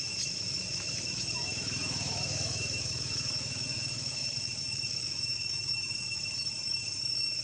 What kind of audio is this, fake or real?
fake